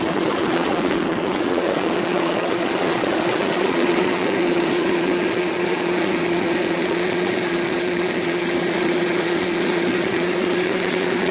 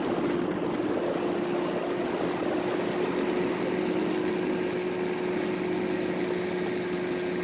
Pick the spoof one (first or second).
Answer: first